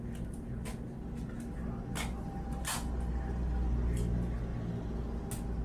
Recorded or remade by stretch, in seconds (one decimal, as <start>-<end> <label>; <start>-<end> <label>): 0.0-5.6 recorded